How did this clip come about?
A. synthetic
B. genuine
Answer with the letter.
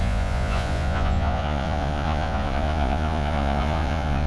A